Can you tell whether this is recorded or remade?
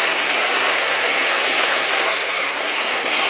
remade